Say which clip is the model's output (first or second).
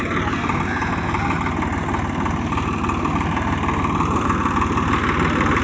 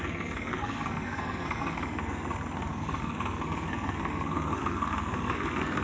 second